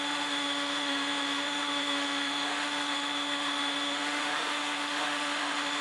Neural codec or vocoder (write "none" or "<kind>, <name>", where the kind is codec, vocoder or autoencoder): autoencoder, DAC-VAE